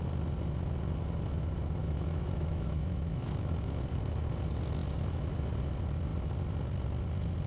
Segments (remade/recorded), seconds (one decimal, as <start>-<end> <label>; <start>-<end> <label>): 0.0-1.8 recorded; 1.8-3.9 remade; 3.9-7.5 recorded